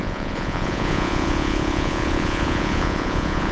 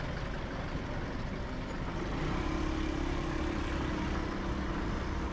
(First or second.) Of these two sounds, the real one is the second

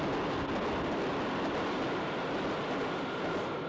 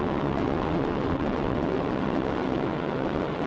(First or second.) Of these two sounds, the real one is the first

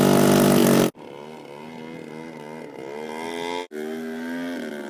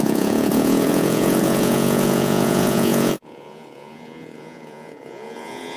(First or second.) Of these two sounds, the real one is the first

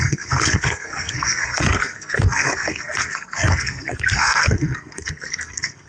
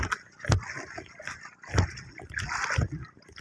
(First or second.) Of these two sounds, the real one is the second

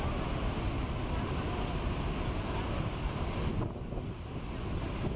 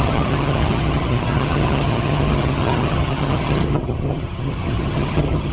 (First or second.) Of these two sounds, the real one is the first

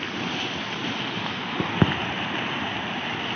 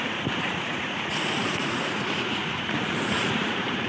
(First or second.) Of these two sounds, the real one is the first